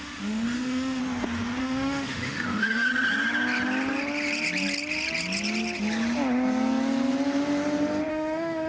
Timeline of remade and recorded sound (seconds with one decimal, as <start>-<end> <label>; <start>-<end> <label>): 0.0-1.0 remade; 1.0-1.6 recorded; 1.6-2.9 remade; 2.9-8.1 recorded; 8.1-8.7 remade